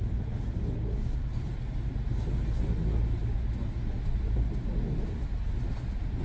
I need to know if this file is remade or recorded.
recorded